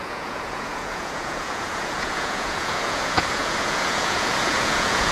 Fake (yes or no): yes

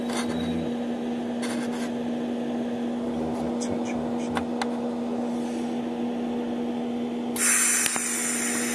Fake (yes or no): no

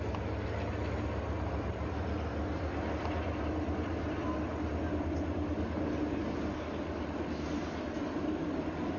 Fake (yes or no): no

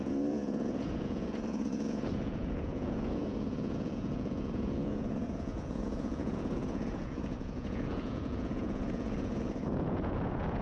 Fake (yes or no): yes